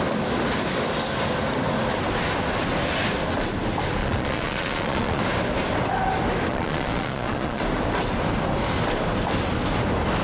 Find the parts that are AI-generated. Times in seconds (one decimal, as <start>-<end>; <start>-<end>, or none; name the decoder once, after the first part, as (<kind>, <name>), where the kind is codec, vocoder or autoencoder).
4.0-5.2 (vocoder, Vocos); 6.5-7.6